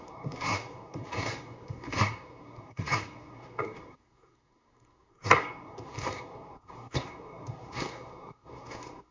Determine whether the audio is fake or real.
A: fake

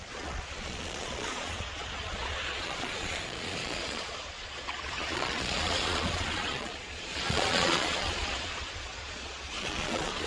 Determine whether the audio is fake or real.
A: fake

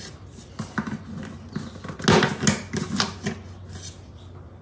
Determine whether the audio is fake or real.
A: real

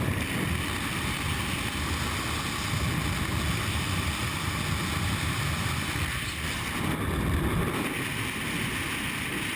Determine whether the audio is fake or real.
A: real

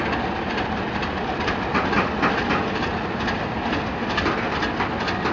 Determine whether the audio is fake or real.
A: real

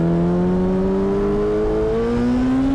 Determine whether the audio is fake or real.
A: real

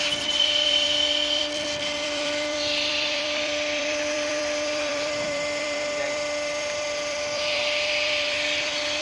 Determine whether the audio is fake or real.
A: fake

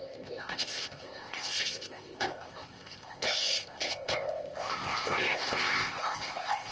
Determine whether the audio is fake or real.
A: fake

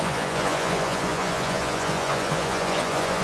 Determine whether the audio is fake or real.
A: fake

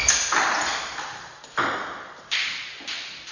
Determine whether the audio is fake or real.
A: real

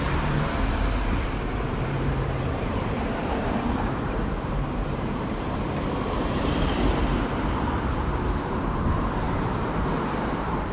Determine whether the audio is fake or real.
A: fake